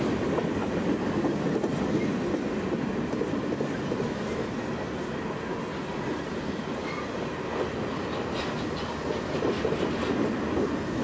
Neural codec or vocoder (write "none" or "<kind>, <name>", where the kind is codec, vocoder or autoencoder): none